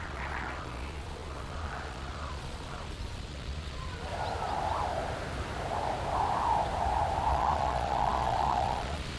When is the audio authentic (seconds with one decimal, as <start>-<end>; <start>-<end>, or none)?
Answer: 4.1-7.3